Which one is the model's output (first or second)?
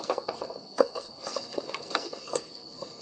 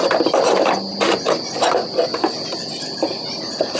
first